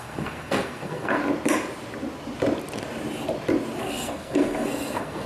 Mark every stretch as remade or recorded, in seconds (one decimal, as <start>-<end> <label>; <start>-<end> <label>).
0.0-1.2 remade; 1.2-3.8 recorded; 3.8-5.3 remade